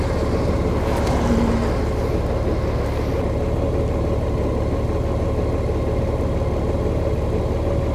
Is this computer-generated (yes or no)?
no